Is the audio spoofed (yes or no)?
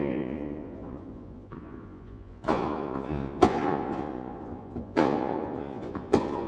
yes